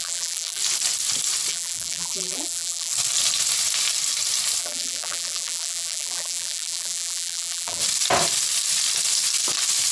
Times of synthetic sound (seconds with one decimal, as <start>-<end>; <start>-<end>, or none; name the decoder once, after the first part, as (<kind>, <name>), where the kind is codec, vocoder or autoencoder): 0.0-0.6 (vocoder, BigVGAN v2); 1.5-2.9; 4.6-7.8